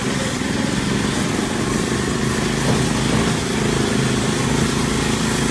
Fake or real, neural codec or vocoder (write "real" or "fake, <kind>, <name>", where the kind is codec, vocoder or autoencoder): real